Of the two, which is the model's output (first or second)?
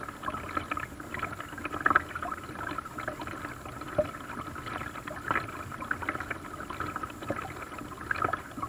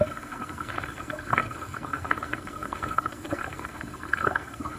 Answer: second